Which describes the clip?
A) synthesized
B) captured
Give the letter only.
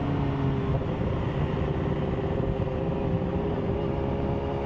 B